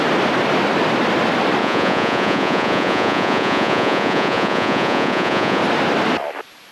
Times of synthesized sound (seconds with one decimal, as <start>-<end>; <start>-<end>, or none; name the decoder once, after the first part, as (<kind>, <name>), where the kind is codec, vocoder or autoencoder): 1.6-5.6 (vocoder, Vocos)